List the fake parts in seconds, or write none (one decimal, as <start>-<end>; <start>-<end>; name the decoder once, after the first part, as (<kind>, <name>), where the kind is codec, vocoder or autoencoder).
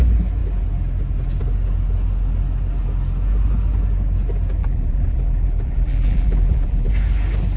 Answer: 4.6-6.9 (vocoder, BigVGAN v2)